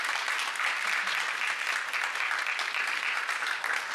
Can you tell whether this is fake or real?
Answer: real